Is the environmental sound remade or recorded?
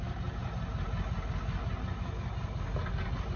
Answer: recorded